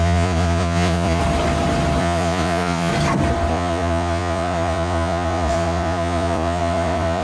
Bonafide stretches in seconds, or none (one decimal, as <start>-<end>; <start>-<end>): 1.2-2.0; 2.9-3.5